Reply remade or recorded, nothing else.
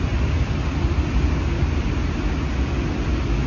recorded